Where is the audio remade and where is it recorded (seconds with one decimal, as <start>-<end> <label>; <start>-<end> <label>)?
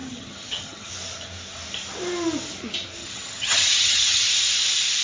0.0-0.9 remade; 0.9-3.0 recorded; 3.0-4.3 remade; 4.3-5.0 recorded